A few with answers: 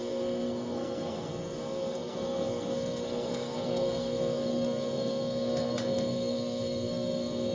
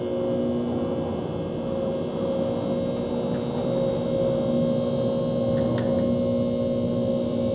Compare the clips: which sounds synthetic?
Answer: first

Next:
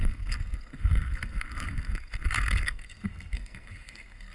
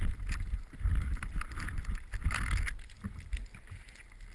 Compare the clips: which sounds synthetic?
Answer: first